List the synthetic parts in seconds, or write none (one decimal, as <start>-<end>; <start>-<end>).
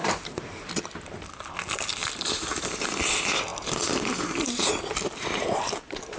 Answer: 0.0-1.3; 2.0-3.0; 3.5-5.7